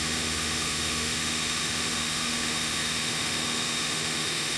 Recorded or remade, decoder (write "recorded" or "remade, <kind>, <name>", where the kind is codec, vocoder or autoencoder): remade, autoencoder, DAC-VAE